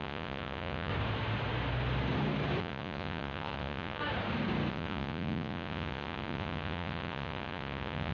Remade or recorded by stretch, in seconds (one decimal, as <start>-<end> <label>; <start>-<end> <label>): 0.0-0.9 remade; 0.9-2.6 recorded; 2.6-4.0 remade; 4.0-4.7 recorded; 4.7-8.1 remade